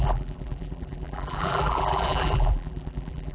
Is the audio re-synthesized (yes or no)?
yes